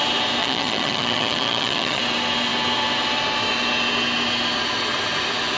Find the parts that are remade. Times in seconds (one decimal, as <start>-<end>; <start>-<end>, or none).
0.4-2.0